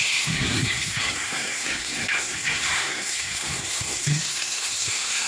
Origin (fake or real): fake